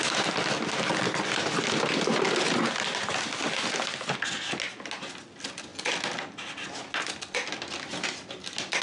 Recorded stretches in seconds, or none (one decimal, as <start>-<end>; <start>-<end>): 0.0-8.8